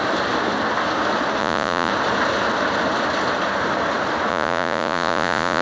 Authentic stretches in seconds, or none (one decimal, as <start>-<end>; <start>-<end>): 0.0-1.4; 1.9-4.3